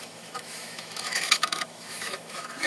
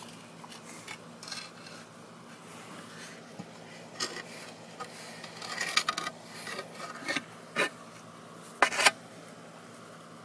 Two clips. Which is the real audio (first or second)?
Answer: second